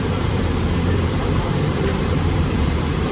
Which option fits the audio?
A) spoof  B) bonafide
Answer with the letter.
A